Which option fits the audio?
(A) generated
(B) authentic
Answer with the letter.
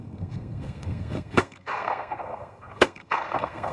A